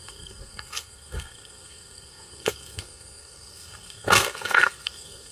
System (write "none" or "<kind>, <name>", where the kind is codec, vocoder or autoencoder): codec, SNAC